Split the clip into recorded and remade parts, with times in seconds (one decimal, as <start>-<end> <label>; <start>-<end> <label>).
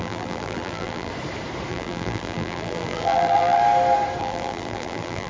0.0-1.1 remade; 1.1-1.7 recorded; 1.7-3.6 remade; 3.6-4.2 recorded; 4.2-5.3 remade